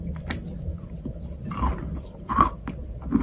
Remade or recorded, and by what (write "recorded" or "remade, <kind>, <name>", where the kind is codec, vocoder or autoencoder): recorded